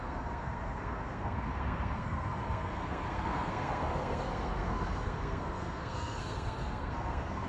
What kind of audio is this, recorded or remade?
remade